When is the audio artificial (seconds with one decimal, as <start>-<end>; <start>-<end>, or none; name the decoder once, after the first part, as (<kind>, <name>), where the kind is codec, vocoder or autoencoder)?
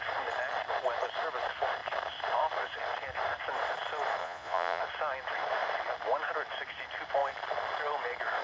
4.2-4.8 (vocoder, Vocos)